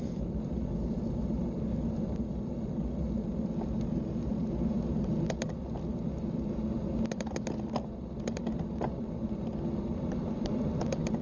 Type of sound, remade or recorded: recorded